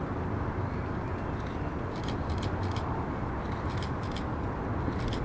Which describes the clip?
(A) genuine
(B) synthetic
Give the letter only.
A